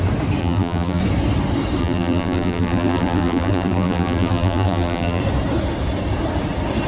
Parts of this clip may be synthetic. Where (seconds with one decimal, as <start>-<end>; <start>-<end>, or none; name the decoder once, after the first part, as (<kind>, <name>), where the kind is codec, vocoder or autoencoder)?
0.4-1.0 (vocoder, BigVGAN v2); 1.8-5.2